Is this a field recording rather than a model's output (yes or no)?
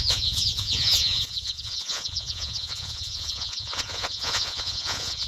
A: no